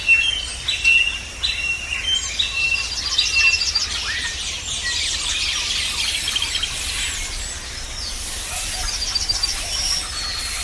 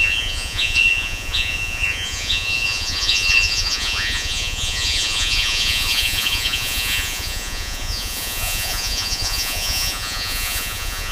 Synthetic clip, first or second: second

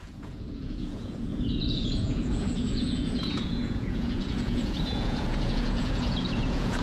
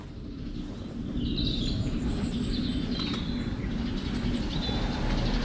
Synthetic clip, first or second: first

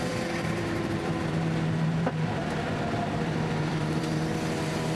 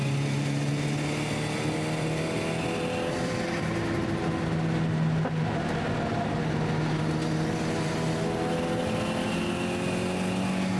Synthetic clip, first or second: first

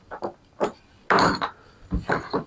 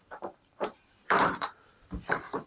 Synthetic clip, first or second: second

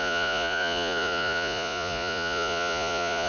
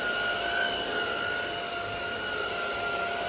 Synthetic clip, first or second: first